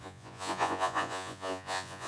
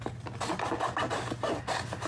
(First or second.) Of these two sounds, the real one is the second